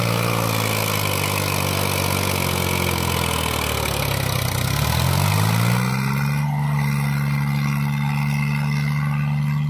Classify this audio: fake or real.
real